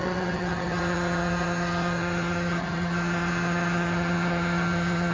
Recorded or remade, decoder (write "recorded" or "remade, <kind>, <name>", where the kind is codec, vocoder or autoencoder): remade, vocoder, HiFi-GAN